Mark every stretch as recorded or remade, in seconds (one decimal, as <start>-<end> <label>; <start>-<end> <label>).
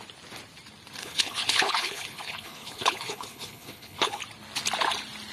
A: 0.0-1.0 recorded; 1.0-4.2 remade; 4.2-5.3 recorded